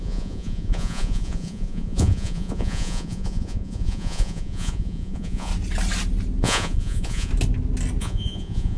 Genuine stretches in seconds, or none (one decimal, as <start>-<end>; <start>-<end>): 5.5-6.4; 7.3-8.0